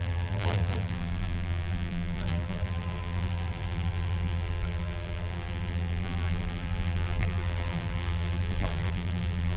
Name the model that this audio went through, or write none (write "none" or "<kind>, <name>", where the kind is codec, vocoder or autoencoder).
vocoder, BigVGAN v2